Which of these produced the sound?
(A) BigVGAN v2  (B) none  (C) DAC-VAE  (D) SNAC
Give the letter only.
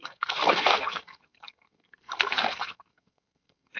D